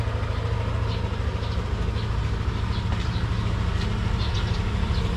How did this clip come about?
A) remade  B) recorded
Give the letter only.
B